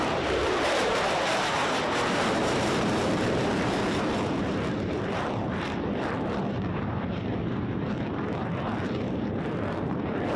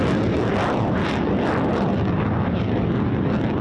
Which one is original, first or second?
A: second